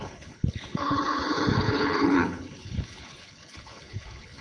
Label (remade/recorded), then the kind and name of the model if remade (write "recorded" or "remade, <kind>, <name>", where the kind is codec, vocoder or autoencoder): remade, codec, HILCodec